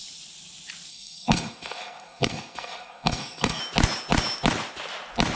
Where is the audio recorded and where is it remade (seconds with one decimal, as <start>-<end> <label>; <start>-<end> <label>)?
0.0-0.9 recorded; 0.9-3.6 remade; 3.6-5.4 recorded